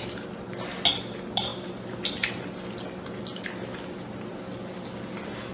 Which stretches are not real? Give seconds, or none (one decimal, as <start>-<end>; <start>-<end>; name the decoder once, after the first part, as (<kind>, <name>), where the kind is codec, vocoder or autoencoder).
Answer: none